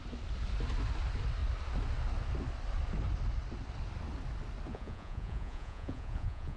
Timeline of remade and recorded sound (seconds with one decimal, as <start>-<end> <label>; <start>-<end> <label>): 0.0-4.7 recorded; 4.7-6.6 remade